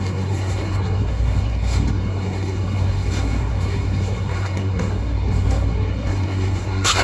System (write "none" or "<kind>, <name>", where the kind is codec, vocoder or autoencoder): codec, SNAC